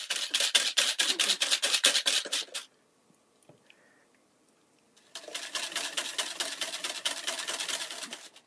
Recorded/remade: recorded